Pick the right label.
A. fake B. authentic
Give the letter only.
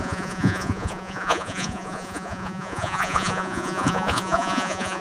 A